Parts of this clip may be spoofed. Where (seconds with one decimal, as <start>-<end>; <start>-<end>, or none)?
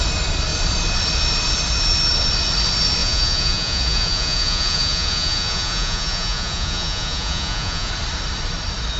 3.0-7.9